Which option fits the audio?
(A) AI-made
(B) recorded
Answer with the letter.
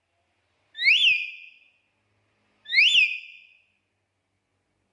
B